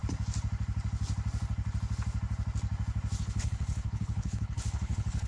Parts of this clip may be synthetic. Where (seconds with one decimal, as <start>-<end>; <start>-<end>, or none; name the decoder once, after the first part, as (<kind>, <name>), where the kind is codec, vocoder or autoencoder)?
3.2-5.3 (codec, HILCodec)